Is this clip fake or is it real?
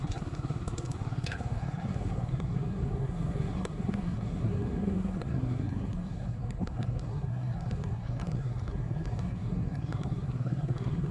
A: fake